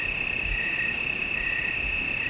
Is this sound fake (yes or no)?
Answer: no